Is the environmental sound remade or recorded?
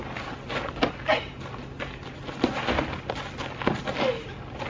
recorded